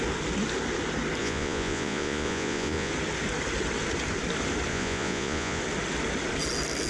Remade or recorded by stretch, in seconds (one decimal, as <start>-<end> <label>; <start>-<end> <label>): 0.0-1.2 recorded; 1.2-2.9 remade; 2.9-4.7 recorded; 4.7-5.6 remade; 5.6-6.9 recorded